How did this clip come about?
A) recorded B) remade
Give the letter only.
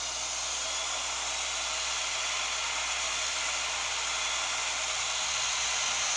A